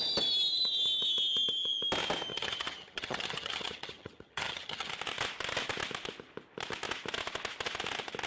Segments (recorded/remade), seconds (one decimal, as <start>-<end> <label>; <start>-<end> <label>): 0.0-2.3 recorded; 2.3-4.9 remade; 4.9-8.3 recorded